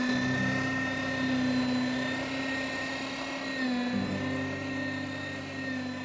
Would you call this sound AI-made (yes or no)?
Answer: no